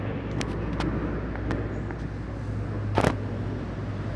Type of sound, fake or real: real